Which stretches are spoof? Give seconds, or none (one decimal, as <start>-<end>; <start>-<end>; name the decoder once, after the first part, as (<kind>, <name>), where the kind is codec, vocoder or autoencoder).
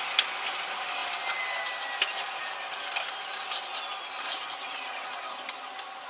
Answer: none